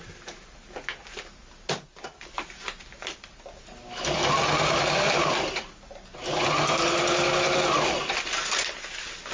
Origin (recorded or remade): recorded